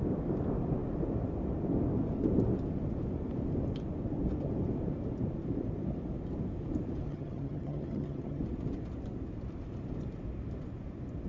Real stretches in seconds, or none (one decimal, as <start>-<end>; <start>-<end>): 0.0-7.1; 8.4-11.3